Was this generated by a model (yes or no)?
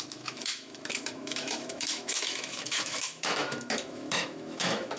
yes